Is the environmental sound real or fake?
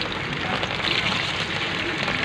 real